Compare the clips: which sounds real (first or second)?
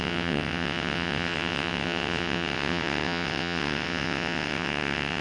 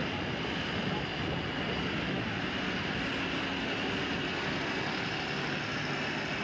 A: second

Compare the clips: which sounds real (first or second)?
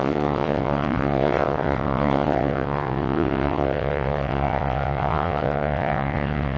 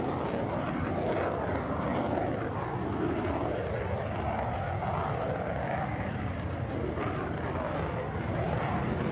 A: second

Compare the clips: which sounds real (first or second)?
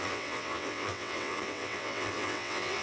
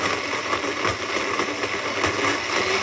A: second